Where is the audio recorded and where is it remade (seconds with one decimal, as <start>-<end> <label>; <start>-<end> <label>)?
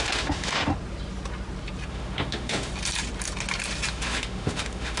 0.0-0.7 remade; 0.7-1.9 recorded; 1.9-2.7 remade; 2.7-3.9 recorded; 3.9-5.0 remade